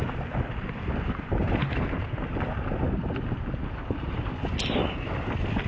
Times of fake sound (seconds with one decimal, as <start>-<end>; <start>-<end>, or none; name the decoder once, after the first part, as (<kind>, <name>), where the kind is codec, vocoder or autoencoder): none